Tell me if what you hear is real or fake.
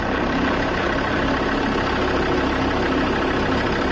real